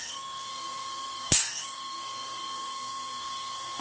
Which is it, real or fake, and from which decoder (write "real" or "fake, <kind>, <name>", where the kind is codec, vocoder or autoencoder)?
fake, codec, SNAC